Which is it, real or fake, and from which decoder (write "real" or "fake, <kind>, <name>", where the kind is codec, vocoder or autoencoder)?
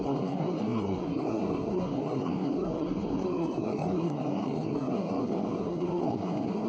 fake, codec, SNAC